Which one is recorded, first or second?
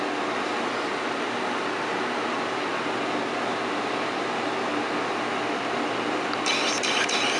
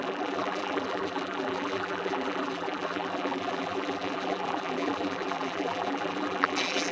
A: first